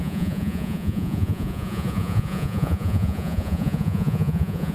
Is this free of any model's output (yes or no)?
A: no